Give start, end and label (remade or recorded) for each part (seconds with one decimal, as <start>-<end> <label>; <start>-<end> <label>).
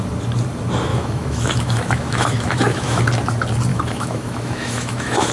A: 0.0-0.9 recorded; 0.9-3.0 remade; 3.0-3.7 recorded; 3.7-5.3 remade